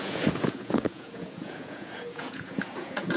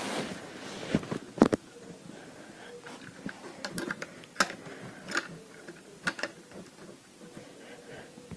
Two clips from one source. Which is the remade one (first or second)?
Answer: first